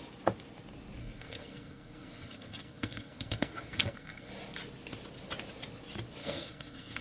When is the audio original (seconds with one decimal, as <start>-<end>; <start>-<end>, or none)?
0.0-1.0; 4.3-6.2